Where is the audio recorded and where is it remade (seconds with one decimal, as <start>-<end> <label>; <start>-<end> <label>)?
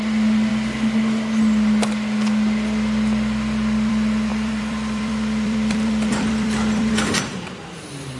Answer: 0.0-0.5 remade; 0.5-3.9 recorded; 3.9-8.2 remade